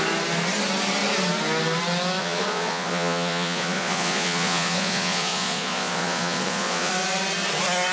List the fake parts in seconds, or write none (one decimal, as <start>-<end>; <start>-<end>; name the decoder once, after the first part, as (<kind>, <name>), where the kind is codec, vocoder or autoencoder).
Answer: 2.2-6.9 (vocoder, Vocos)